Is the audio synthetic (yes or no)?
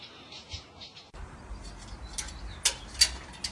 no